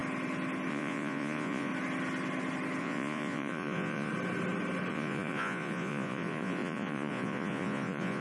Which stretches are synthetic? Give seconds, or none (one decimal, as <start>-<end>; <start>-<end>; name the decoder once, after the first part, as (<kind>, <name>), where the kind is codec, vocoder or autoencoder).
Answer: 0.7-1.7 (vocoder, Vocos); 2.8-4.1; 4.9-8.2